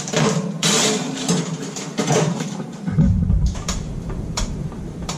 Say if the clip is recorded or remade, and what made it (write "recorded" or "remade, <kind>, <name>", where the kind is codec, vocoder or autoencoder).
remade, vocoder, BigVGAN v2